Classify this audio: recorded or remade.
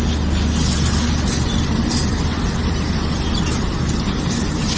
recorded